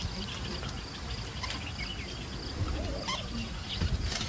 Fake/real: real